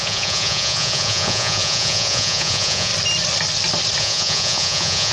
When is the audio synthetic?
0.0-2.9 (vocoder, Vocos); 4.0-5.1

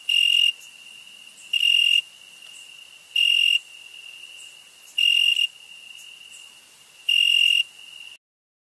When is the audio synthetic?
none

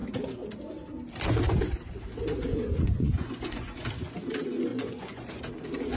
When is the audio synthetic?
2.5-3.9 (vocoder, Vocos); 4.7-5.4

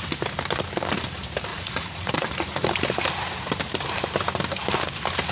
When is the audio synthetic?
1.5-2.7 (vocoder, Vocos)

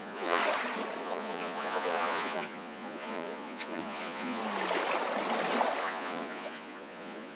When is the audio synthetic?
0.0-0.4 (vocoder, Vocos); 1.0-4.4; 5.8-7.4

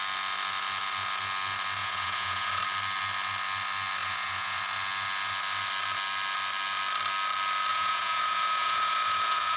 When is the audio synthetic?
1.8-2.6 (vocoder, Vocos); 4.0-4.6; 7.7-9.6